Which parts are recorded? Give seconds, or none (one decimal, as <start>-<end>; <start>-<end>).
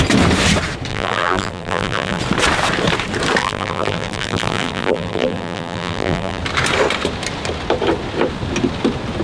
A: 0.0-0.9; 2.2-3.4; 6.4-9.2